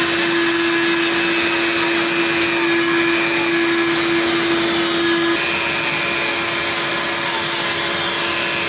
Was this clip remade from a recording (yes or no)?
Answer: no